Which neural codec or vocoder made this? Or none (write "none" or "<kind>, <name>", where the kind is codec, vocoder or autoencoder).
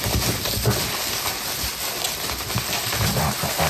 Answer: none